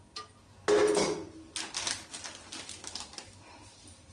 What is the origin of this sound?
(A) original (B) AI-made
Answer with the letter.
A